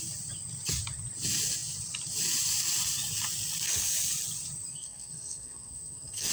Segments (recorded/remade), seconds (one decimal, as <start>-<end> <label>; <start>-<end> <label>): 0.0-4.7 recorded; 4.7-6.3 remade